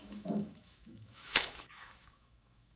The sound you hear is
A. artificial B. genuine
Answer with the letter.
A